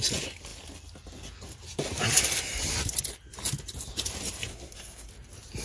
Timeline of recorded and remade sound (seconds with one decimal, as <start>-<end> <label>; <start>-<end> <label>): 0.0-4.5 recorded; 4.5-5.1 remade; 5.1-5.6 recorded